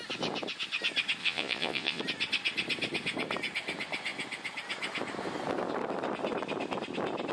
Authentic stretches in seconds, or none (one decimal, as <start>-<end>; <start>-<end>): 0.0-1.2; 2.0-7.3